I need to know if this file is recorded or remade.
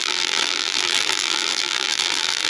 remade